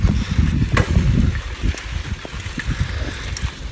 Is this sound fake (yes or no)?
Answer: no